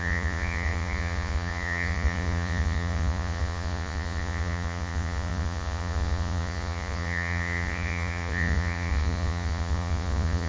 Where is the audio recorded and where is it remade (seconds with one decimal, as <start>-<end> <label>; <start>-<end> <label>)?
0.0-10.5 remade